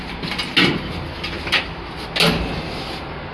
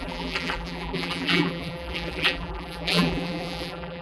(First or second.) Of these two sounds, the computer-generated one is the second